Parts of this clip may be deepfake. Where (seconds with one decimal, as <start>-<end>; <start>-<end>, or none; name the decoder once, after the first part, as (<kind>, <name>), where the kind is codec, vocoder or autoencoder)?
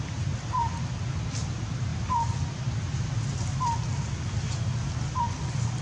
none